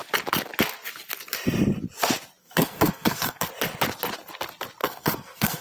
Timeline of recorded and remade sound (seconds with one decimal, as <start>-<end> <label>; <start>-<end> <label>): 0.0-2.4 recorded; 2.4-3.5 remade; 3.5-4.8 recorded; 4.8-5.6 remade